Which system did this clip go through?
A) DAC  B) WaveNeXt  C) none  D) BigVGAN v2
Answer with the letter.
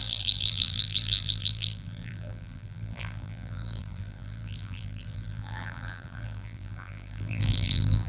D